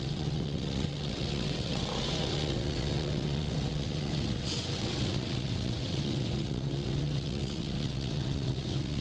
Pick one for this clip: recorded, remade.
remade